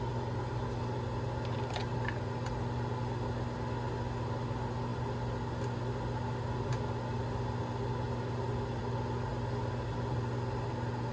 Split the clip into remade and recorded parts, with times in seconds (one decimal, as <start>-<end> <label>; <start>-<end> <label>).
0.0-8.8 recorded; 8.8-9.3 remade; 9.3-11.1 recorded